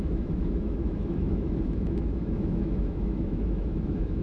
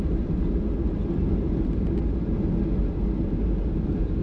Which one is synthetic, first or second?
first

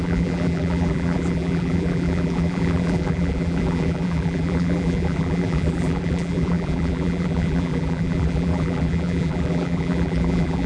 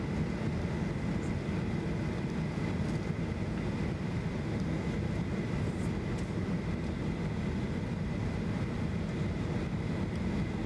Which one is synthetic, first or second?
first